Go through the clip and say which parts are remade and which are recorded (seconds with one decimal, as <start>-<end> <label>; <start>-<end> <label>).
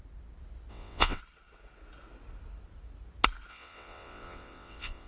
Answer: 0.0-0.7 recorded; 0.7-1.2 remade; 1.2-3.5 recorded; 3.5-5.1 remade